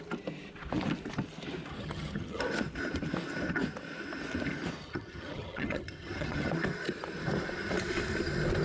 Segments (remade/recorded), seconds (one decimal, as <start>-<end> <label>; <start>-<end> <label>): 0.0-1.7 recorded; 1.7-2.4 remade; 2.4-4.8 recorded; 4.8-6.5 remade; 6.5-8.6 recorded